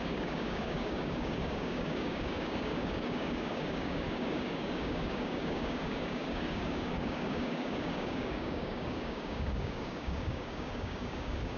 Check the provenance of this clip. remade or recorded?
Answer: remade